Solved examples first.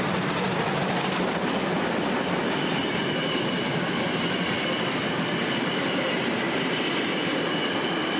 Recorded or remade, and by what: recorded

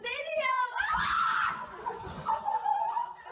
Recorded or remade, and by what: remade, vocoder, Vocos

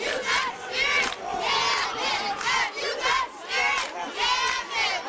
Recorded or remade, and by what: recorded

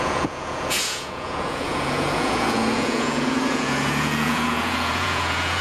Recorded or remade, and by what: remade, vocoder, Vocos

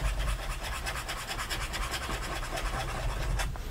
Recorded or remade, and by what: recorded